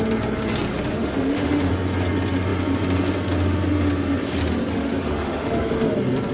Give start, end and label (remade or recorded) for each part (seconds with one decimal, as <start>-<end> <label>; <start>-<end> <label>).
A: 0.0-0.7 recorded; 0.7-1.7 remade; 1.7-4.7 recorded; 4.7-5.5 remade; 5.5-6.3 recorded